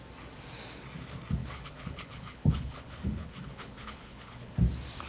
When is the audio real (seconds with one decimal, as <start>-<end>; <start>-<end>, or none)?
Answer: 0.0-1.4; 4.5-5.1

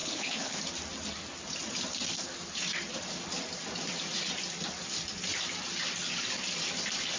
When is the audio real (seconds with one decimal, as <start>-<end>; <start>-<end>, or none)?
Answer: 0.6-7.2

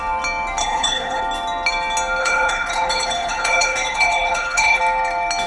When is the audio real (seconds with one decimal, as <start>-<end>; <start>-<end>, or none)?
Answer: 0.0-0.6; 1.2-2.2; 4.8-5.5

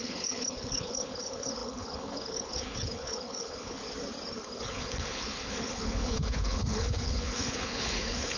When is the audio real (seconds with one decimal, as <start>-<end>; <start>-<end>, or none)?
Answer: 3.8-4.6